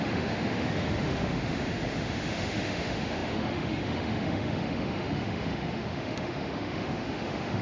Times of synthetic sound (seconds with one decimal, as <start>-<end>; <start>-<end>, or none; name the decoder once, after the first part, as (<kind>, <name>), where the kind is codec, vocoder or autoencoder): 0.0-7.6 (autoencoder, DAC-VAE)